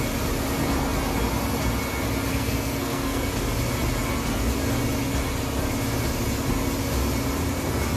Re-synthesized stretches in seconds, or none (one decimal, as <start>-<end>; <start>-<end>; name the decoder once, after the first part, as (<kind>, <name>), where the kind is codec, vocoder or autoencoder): 2.3-3.3 (codec, SNAC)